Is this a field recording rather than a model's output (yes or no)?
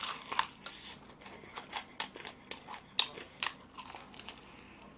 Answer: yes